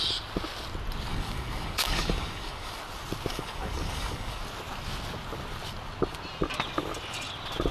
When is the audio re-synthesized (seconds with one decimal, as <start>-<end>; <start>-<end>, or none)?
1.1-2.8; 3.3-4.4